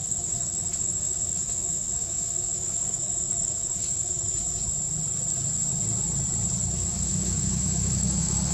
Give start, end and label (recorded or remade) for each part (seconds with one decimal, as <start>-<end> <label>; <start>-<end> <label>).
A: 0.0-4.6 remade; 4.6-6.9 recorded; 6.9-8.5 remade